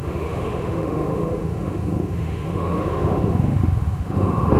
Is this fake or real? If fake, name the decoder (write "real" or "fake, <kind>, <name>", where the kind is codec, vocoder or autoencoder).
fake, autoencoder, DAC-VAE